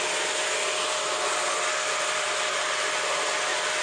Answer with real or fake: real